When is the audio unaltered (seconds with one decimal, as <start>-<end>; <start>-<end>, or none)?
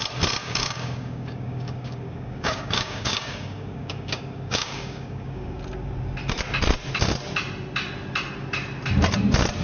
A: 0.0-0.4; 5.6-9.6